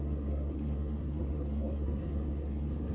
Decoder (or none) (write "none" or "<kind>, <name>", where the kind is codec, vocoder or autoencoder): codec, SNAC